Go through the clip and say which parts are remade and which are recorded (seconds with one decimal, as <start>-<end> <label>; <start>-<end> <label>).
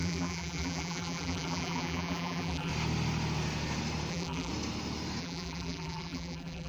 0.0-2.7 remade; 2.7-4.1 recorded; 4.1-4.5 remade; 4.5-5.2 recorded; 5.2-6.7 remade